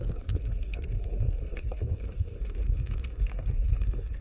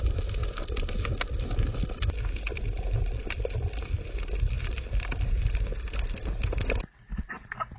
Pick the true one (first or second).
second